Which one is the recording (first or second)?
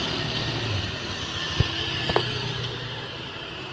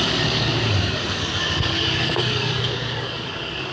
first